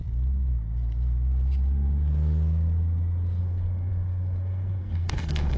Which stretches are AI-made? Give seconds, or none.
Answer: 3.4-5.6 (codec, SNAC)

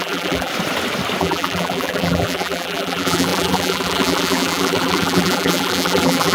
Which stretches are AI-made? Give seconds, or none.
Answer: 0.0-0.5 (vocoder, BigVGAN v2); 1.2-6.3

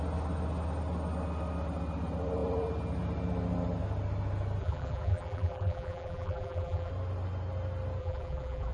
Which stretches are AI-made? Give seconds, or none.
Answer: 4.6-6.9 (vocoder, BigVGAN v2); 8.0-8.7

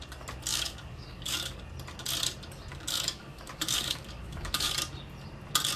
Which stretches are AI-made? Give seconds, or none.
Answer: 0.5-1.6 (codec, DAC); 2.7-4.7

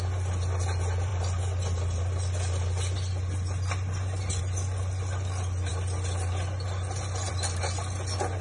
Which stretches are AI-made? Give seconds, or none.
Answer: none

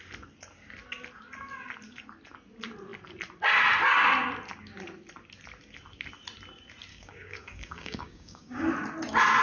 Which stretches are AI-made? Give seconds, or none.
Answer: 6.9-8.7 (codec, DAC)

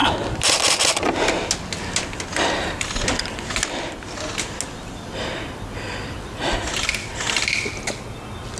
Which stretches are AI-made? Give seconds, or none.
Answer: none